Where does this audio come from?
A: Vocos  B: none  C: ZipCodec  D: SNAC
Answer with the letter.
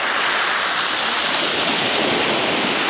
B